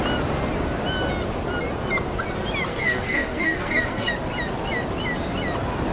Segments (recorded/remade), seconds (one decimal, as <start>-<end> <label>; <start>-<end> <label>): 0.0-2.7 recorded; 2.7-4.1 remade; 4.1-5.9 recorded